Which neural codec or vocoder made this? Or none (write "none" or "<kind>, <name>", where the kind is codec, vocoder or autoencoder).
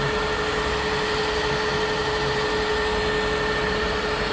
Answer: none